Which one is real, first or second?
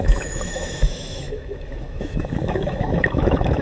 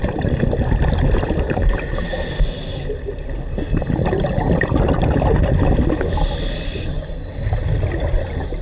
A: second